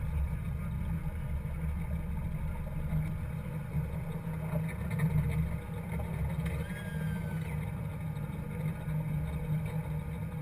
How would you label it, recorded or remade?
recorded